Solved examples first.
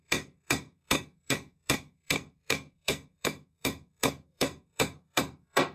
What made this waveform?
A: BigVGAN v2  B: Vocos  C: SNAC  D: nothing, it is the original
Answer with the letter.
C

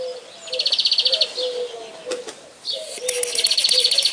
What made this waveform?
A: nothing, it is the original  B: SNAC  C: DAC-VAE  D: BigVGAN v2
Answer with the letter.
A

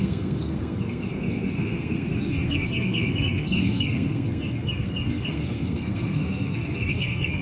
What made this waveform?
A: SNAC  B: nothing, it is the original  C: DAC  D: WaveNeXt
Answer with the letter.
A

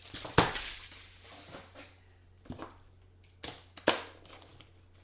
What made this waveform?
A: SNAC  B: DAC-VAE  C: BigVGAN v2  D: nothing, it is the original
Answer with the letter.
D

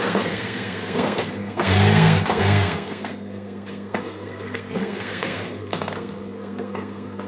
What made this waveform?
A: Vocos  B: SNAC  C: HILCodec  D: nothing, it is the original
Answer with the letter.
B